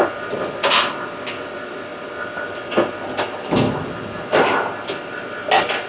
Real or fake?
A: real